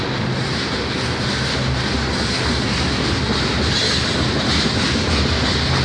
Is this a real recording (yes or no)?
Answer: yes